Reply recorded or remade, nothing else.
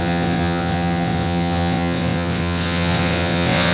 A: remade